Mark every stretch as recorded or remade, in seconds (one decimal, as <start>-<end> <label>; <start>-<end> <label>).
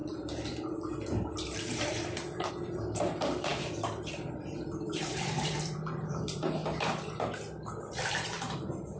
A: 0.0-6.6 remade; 6.6-8.1 recorded; 8.1-9.0 remade